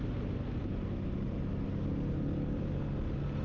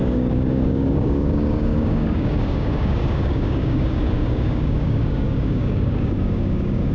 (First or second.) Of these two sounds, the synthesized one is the second